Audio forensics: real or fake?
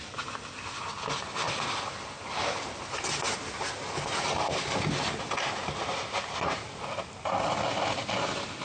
real